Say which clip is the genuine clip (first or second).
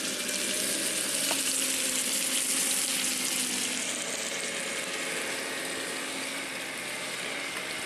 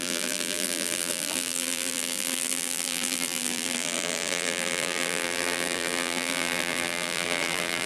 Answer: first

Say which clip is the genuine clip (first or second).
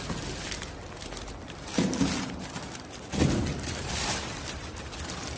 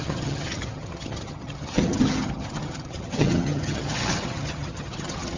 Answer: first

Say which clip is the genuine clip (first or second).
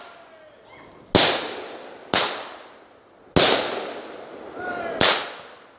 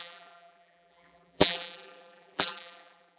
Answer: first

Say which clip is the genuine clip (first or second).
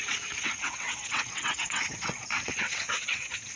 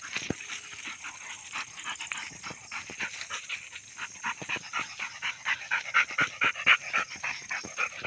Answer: second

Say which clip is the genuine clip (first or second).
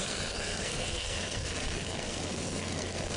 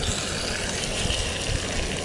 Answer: second